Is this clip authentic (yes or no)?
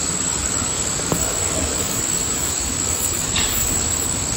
no